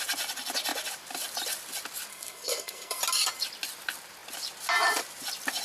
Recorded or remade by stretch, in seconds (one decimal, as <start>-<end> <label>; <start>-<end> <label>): 0.0-2.1 recorded; 2.1-3.0 remade; 3.0-5.6 recorded